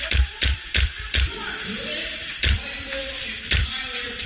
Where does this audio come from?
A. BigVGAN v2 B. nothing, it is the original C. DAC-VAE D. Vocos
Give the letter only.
A